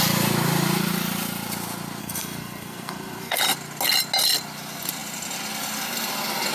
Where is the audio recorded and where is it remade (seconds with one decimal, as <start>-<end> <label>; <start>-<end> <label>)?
0.0-2.0 recorded; 2.0-3.4 remade; 3.4-6.5 recorded